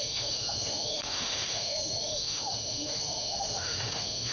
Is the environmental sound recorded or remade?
remade